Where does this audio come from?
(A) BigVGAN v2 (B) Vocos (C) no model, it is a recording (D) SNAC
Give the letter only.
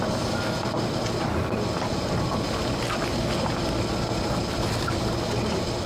C